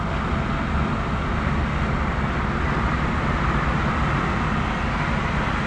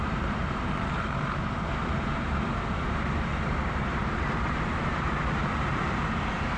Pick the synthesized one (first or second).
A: second